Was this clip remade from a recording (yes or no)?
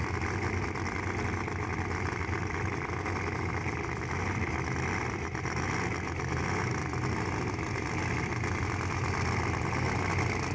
no